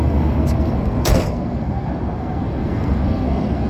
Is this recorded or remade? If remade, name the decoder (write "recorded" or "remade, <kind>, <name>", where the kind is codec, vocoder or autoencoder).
remade, codec, SNAC